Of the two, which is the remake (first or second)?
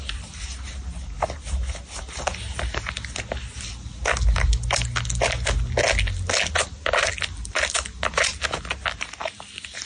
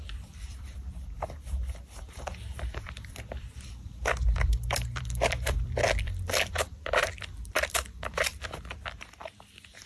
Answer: second